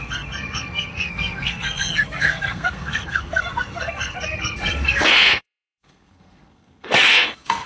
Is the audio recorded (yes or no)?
no